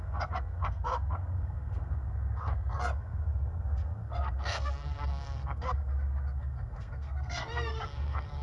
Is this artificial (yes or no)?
yes